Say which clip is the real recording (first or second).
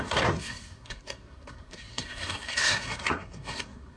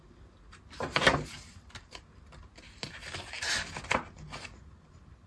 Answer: second